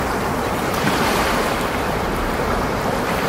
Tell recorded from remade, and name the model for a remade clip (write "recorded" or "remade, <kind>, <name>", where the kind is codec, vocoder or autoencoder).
remade, vocoder, BigVGAN v2